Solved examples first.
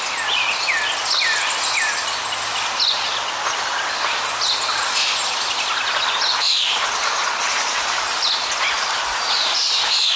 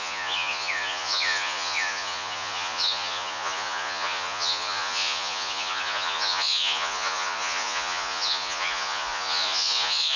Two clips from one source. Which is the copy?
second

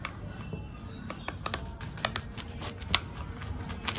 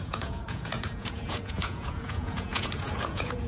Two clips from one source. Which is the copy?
second